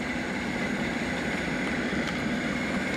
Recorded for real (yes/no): yes